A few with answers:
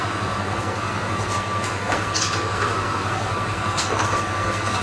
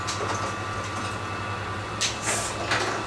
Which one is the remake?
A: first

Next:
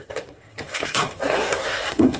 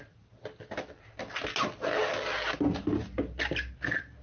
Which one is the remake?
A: first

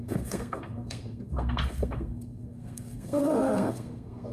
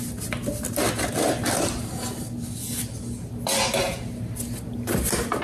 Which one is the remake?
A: first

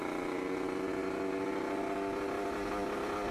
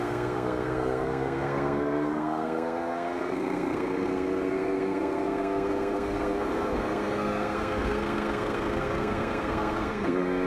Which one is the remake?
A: second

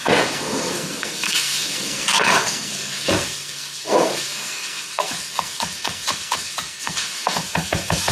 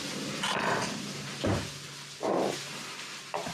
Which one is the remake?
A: first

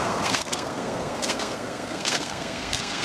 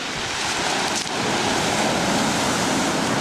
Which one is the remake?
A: first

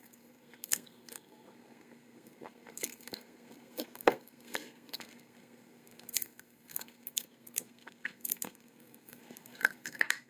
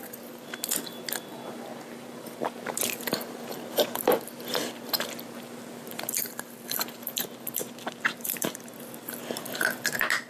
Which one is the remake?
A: first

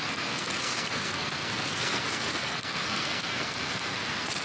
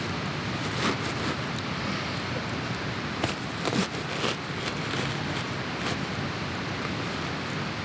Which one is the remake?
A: first